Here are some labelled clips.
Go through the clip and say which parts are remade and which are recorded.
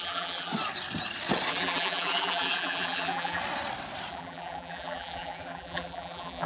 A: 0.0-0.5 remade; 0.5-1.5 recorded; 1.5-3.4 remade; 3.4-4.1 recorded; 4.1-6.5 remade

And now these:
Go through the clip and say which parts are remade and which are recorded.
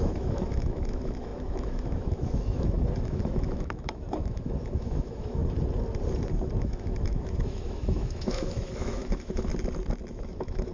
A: 0.0-5.4 remade; 5.4-6.6 recorded; 6.6-9.5 remade; 9.5-10.1 recorded; 10.1-10.7 remade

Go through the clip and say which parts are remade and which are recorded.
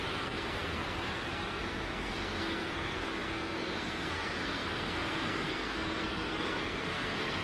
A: 0.0-7.4 remade